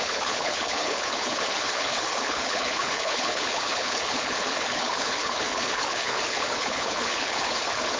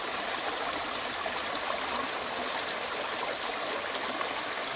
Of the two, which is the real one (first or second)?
second